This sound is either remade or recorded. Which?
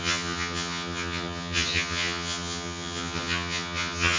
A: remade